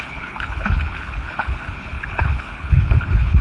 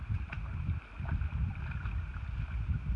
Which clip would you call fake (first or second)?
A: first